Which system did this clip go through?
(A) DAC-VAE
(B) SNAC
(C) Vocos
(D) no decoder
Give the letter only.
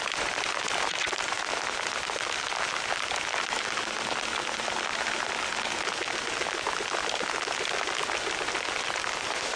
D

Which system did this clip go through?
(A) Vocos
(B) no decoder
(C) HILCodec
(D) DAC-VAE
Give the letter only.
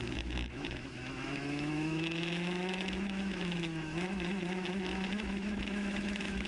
D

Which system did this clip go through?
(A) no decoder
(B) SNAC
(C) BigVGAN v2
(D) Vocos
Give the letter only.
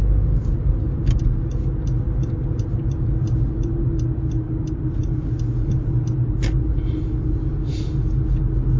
A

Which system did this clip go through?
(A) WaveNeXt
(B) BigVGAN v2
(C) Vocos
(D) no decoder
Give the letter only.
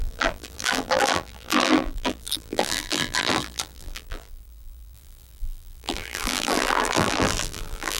B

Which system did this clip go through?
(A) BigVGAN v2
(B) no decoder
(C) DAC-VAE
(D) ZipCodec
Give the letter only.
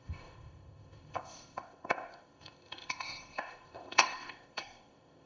D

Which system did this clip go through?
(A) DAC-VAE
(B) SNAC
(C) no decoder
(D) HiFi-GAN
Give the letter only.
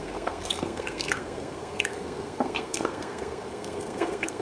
B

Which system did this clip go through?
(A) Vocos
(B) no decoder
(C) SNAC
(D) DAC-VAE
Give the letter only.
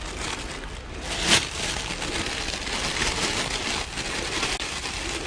B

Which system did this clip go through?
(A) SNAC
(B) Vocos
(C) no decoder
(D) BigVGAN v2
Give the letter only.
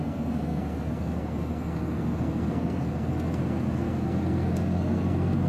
A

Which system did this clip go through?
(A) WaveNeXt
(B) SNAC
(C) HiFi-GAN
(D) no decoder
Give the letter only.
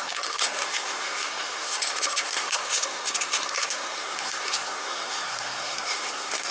B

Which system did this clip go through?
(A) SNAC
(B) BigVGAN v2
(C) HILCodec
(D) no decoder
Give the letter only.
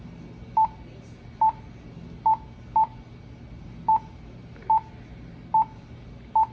D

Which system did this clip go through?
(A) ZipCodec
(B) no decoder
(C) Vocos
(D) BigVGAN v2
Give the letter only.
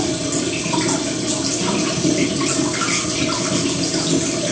B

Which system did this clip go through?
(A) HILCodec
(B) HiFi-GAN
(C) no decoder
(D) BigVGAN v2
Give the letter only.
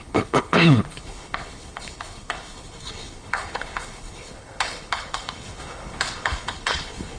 A